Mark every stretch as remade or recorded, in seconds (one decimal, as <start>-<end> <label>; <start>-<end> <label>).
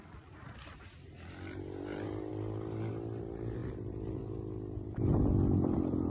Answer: 0.0-2.3 recorded; 2.3-2.9 remade; 2.9-6.1 recorded